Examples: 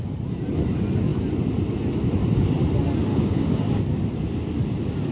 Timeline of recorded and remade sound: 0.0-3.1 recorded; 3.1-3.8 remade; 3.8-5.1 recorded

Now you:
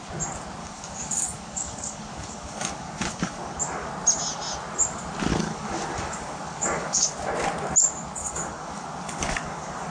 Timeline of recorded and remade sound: 0.0-0.6 recorded; 0.6-3.9 remade; 3.9-5.3 recorded; 5.3-7.1 remade; 7.1-8.2 recorded; 8.2-9.9 remade

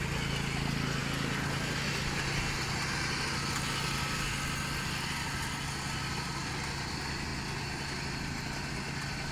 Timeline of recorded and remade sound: 0.0-9.3 recorded

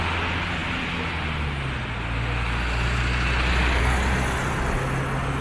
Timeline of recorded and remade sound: 0.0-5.4 recorded

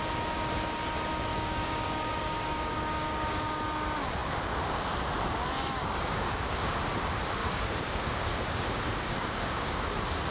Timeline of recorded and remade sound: 0.0-1.3 recorded; 1.3-3.4 remade; 3.4-5.8 recorded; 5.8-6.7 remade; 6.7-7.4 recorded; 7.4-9.8 remade; 9.8-10.3 recorded

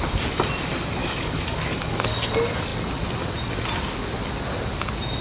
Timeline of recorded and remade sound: 0.0-1.0 recorded; 1.0-2.1 remade; 2.1-5.2 recorded